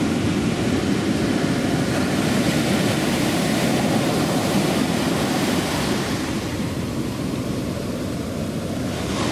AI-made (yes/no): no